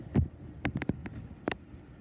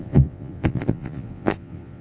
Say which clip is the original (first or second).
first